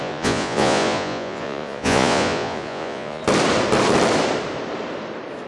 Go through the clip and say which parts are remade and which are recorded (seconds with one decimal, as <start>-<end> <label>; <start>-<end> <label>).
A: 0.0-3.2 remade; 3.2-5.5 recorded